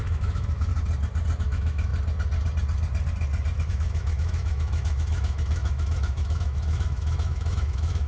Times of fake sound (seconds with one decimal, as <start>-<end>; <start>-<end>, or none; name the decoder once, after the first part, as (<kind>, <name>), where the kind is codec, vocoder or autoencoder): 0.0-0.7 (autoencoder, DAC-VAE); 1.4-1.9; 3.7-8.1